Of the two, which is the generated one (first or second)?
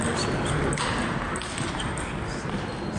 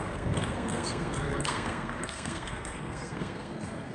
second